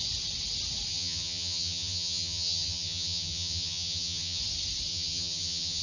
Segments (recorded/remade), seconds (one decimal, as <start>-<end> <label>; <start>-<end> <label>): 0.0-0.9 recorded; 0.9-4.4 remade; 4.4-4.9 recorded; 4.9-5.8 remade